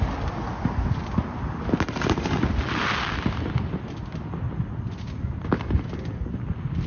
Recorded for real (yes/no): yes